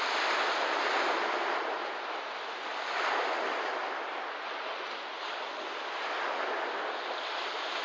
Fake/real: real